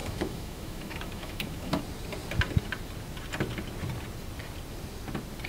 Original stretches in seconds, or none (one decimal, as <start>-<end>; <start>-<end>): 1.8-5.5